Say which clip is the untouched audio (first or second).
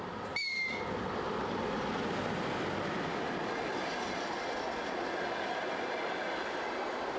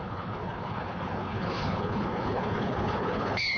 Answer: first